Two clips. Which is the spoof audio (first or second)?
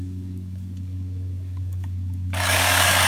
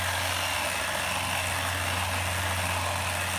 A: first